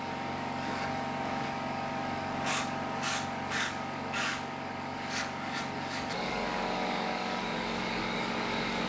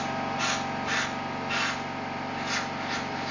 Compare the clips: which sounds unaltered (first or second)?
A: second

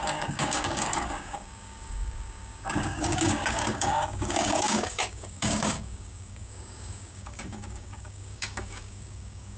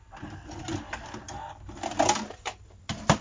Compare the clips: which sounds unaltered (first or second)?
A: second